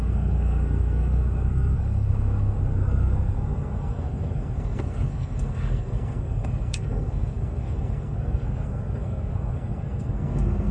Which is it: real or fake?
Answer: fake